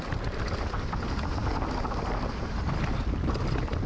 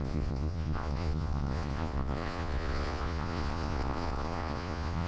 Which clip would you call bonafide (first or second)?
first